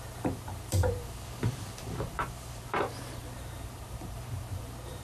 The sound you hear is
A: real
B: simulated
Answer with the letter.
B